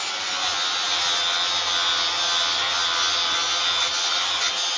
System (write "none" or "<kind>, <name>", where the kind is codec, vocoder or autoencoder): none